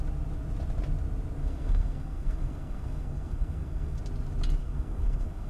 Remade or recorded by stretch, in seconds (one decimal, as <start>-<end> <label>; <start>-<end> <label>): 0.0-1.4 recorded; 1.4-4.0 remade; 4.0-4.6 recorded; 4.6-5.5 remade